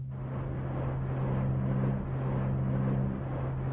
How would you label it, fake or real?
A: real